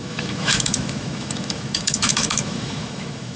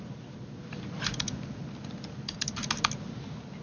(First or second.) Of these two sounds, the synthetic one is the first